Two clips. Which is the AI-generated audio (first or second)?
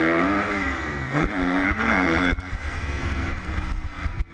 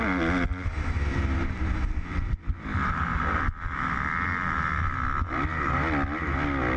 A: first